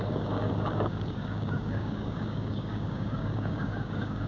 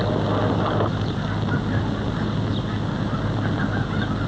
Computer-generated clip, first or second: first